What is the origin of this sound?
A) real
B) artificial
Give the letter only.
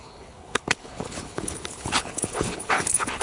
B